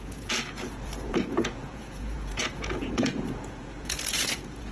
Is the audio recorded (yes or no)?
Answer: no